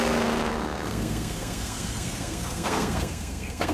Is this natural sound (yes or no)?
no